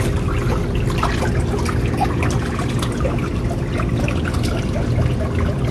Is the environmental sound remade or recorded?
recorded